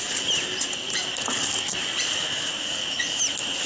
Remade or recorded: recorded